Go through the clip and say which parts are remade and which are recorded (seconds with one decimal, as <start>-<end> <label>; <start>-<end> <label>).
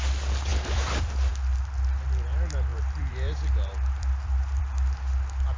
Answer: 0.0-0.5 recorded; 0.5-1.3 remade; 1.3-2.7 recorded; 2.7-4.6 remade; 4.6-5.6 recorded